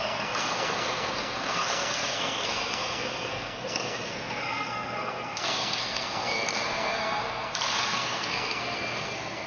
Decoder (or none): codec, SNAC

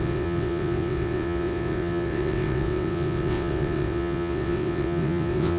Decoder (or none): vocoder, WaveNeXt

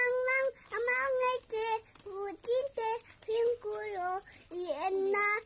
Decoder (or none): none